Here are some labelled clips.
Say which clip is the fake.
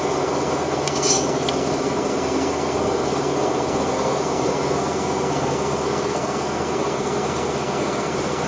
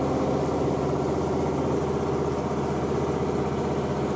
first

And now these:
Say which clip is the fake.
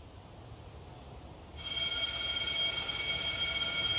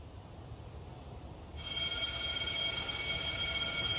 second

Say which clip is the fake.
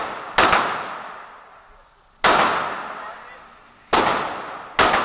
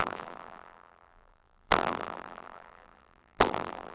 second